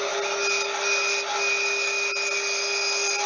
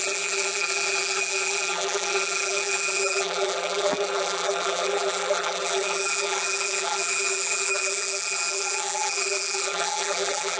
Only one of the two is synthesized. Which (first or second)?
second